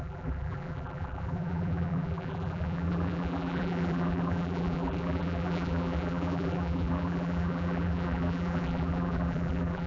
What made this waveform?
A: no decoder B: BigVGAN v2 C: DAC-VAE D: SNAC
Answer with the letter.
B